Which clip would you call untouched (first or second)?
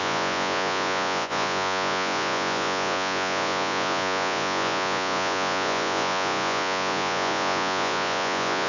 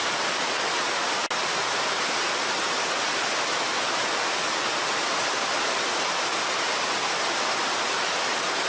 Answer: second